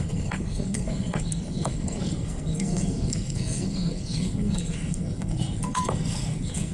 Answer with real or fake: fake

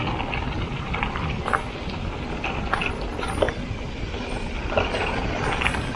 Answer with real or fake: real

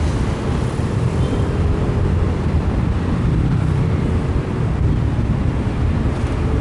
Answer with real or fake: fake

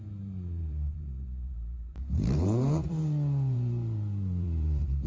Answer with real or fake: fake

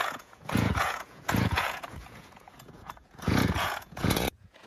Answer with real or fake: fake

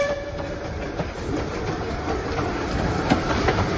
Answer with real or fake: fake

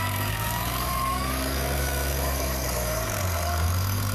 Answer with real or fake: fake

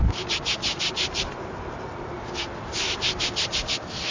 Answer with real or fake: real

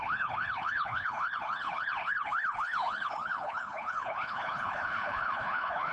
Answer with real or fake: fake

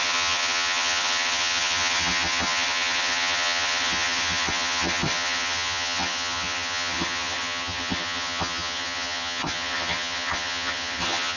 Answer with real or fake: fake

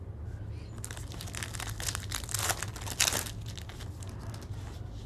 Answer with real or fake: real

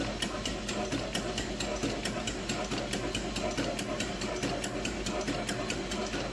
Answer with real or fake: real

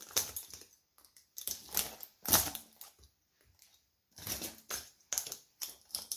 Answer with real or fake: real